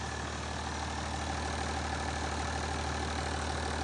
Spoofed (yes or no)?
no